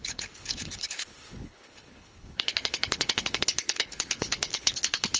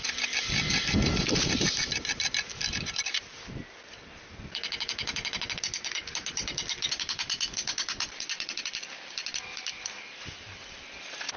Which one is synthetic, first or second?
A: first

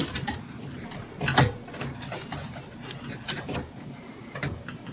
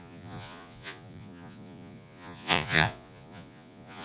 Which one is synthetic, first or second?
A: second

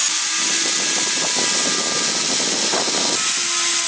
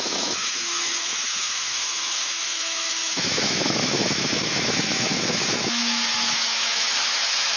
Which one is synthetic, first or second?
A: second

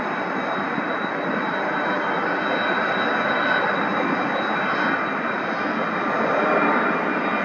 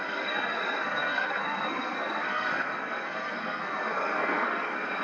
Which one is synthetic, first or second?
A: second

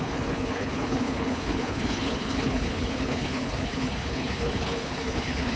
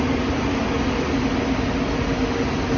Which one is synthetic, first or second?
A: first